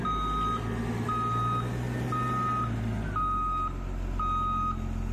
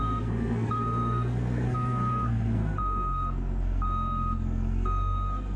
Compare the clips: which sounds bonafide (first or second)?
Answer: first